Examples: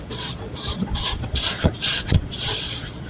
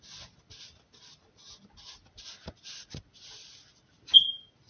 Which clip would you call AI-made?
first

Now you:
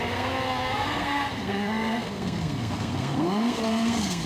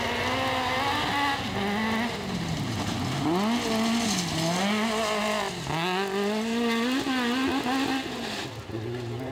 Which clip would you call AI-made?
first